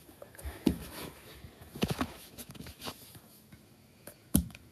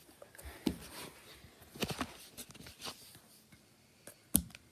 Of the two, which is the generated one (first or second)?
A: first